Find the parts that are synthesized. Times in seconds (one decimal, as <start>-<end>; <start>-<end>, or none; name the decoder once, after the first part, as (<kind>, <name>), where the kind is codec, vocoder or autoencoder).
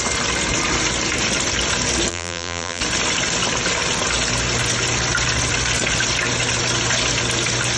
2.1-2.8 (vocoder, BigVGAN v2)